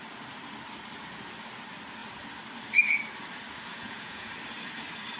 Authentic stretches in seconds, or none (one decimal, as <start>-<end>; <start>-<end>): 0.0-3.7; 4.3-5.2